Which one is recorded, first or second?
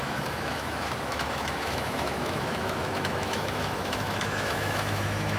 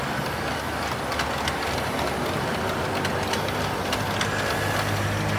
second